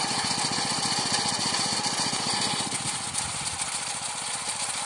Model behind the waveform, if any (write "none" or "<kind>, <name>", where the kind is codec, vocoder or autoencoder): none